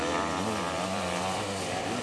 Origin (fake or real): real